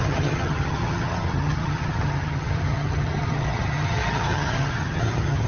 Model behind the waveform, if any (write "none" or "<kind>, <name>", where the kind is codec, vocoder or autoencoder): vocoder, HiFi-GAN